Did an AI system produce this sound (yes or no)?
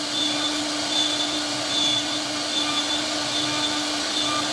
no